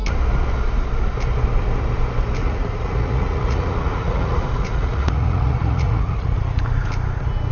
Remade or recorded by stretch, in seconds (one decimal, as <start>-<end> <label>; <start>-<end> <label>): 0.0-2.4 recorded; 2.4-6.9 remade; 6.9-7.5 recorded